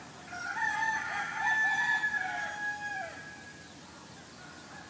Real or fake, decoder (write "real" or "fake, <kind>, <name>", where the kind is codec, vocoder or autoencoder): real